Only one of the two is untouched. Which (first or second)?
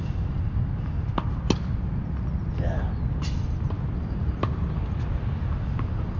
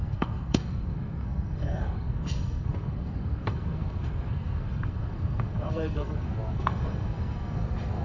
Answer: first